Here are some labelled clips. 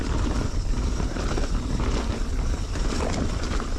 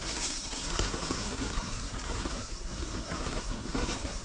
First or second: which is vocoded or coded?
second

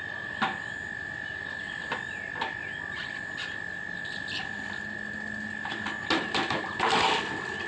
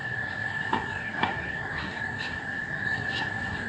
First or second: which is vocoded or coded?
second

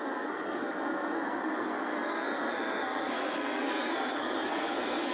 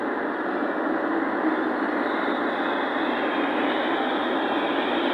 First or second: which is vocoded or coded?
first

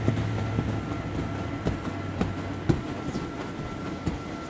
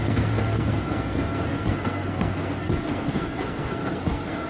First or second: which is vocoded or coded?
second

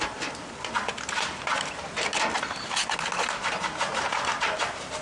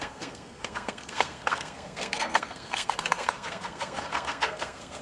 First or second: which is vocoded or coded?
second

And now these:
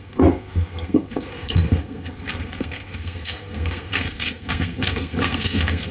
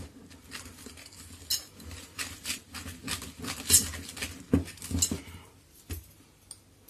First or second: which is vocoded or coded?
first